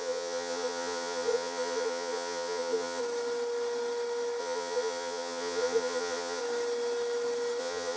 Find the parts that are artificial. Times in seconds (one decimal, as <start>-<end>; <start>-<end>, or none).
0.0-3.0; 4.4-6.4; 7.6-8.0